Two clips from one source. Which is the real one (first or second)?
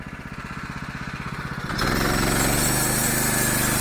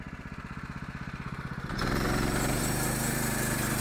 first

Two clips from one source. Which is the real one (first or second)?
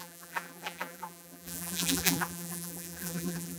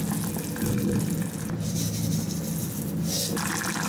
second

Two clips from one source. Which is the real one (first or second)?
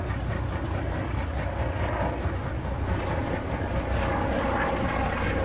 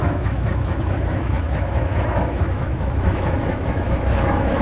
first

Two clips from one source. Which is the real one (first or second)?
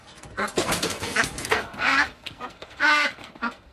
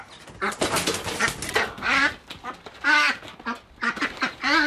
second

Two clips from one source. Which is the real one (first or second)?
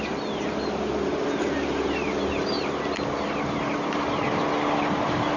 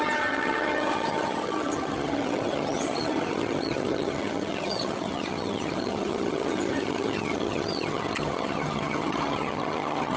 first